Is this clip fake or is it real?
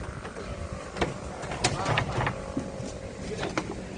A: real